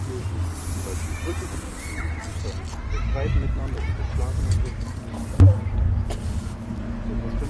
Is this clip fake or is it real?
real